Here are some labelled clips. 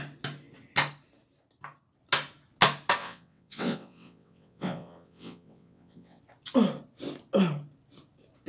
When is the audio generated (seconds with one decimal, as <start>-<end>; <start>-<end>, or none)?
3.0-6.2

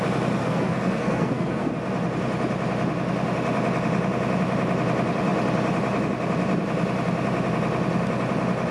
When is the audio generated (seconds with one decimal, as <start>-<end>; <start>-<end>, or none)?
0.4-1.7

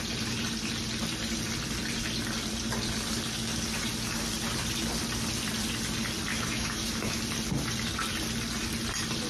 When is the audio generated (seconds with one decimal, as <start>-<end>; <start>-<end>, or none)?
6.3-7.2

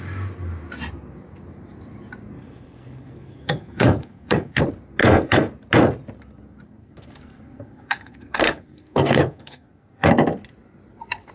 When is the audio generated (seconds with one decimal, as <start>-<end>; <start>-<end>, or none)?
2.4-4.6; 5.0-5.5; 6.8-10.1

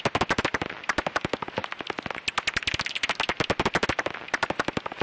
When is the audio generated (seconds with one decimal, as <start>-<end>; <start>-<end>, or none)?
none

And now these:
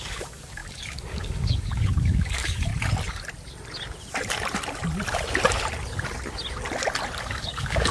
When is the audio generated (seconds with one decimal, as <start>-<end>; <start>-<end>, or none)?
0.0-2.7; 7.2-7.9

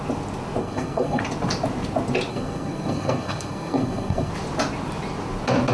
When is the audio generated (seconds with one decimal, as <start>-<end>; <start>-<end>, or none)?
0.6-1.2; 2.3-4.3